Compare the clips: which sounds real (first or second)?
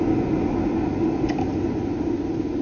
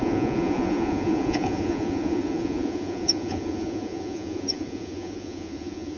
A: first